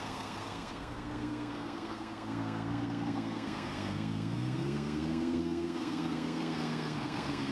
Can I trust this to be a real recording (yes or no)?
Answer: no